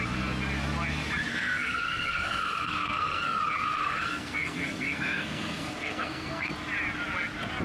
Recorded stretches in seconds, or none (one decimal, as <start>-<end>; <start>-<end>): 0.0-1.3; 3.4-3.8; 6.5-7.6